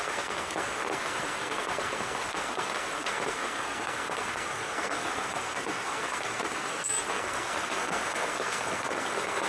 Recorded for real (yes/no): no